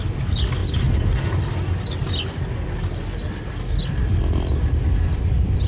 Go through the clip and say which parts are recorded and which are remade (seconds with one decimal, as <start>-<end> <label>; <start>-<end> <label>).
0.0-5.7 recorded